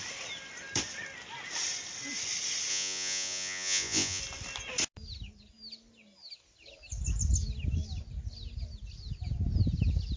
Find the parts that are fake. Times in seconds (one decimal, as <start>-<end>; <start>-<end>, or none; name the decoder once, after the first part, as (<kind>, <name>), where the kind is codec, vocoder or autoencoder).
2.7-4.2 (vocoder, Vocos)